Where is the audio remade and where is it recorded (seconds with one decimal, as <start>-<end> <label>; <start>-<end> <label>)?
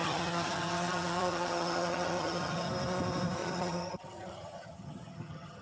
0.0-2.7 remade; 2.7-3.4 recorded; 3.4-5.6 remade